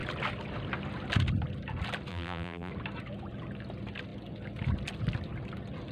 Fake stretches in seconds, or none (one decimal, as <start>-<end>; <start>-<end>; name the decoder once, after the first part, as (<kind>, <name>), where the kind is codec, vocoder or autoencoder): 2.1-2.7 (vocoder, BigVGAN v2)